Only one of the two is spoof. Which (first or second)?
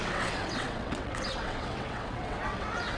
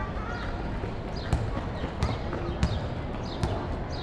first